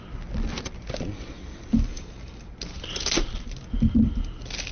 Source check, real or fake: real